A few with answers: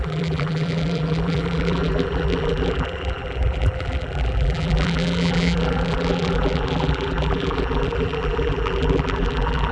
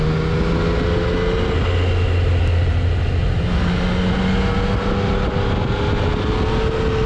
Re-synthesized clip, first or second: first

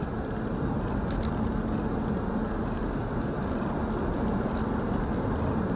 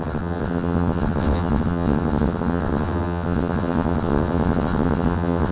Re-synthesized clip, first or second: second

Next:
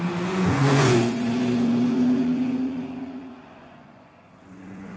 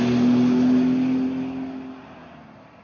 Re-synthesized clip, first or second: first